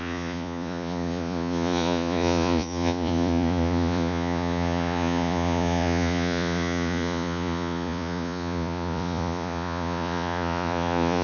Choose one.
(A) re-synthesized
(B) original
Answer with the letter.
A